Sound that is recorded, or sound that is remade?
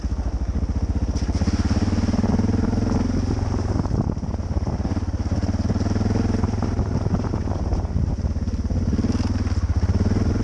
recorded